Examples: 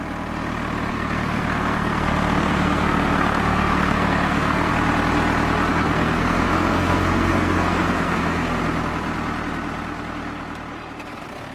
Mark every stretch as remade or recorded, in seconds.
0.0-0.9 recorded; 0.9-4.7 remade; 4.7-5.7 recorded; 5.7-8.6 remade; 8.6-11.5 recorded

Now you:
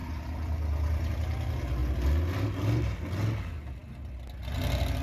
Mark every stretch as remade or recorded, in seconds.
0.0-5.0 recorded

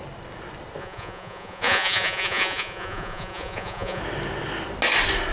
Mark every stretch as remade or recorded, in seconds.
0.0-0.8 recorded; 0.8-4.0 remade; 4.0-5.3 recorded

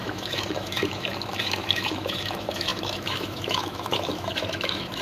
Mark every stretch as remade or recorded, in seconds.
0.0-5.0 remade

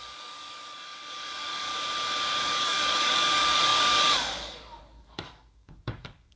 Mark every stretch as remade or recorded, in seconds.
0.0-1.7 remade; 1.7-2.4 recorded; 2.4-6.4 remade

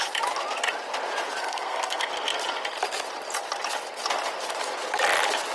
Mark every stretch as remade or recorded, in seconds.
0.0-1.4 recorded; 1.4-2.1 remade; 2.1-5.5 recorded

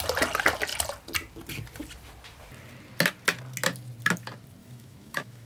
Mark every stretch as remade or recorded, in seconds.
0.0-4.6 recorded; 4.6-5.5 remade